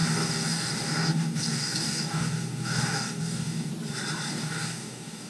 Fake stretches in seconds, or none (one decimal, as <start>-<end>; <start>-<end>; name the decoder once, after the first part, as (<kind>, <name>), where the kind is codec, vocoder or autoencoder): 0.0-3.7 (codec, DAC); 4.3-5.3